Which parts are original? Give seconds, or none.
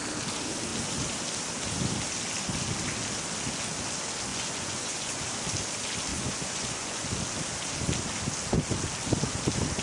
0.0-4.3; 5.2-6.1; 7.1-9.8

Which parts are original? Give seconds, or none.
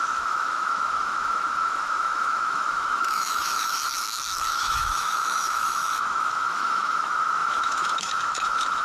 none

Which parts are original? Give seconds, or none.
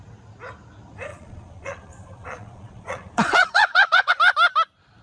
0.0-1.1; 4.1-5.0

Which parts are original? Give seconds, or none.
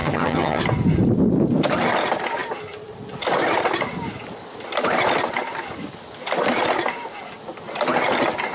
0.6-8.5